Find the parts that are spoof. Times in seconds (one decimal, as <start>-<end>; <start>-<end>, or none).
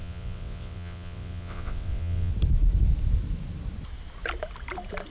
0.0-2.3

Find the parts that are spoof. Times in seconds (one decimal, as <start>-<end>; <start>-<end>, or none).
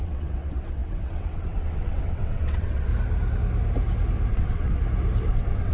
0.0-2.9; 4.3-4.8; 5.3-5.7